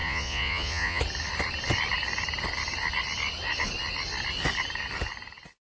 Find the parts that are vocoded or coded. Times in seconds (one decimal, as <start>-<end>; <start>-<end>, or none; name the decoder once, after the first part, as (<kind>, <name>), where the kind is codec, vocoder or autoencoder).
0.0-1.0 (vocoder, Vocos)